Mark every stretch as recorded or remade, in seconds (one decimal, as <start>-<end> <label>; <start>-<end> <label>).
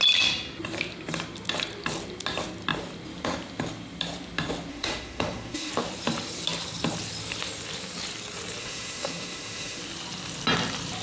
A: 0.0-4.7 recorded; 4.7-5.7 remade; 5.7-8.6 recorded; 8.6-9.8 remade; 9.8-11.0 recorded